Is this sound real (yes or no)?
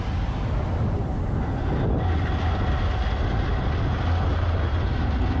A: yes